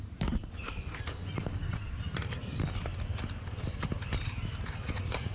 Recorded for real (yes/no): yes